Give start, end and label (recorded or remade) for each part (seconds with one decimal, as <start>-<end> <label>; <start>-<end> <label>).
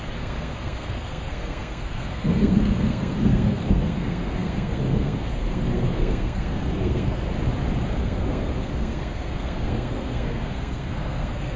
0.0-7.3 remade; 7.3-8.0 recorded; 8.0-11.6 remade